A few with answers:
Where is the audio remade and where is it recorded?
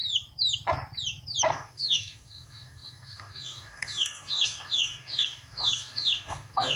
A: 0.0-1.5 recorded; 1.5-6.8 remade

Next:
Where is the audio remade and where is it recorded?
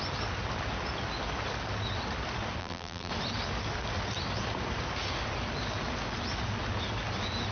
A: 0.0-2.6 recorded; 2.6-3.1 remade; 3.1-7.5 recorded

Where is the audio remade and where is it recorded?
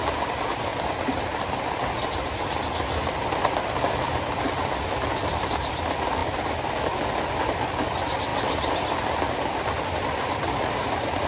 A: 0.0-0.7 recorded; 0.7-5.4 remade; 5.4-6.2 recorded; 6.2-6.7 remade; 6.7-8.3 recorded; 8.3-11.3 remade